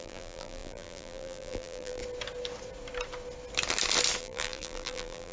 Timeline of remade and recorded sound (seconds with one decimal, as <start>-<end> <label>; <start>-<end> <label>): 0.0-2.0 remade; 2.0-4.2 recorded; 4.2-5.3 remade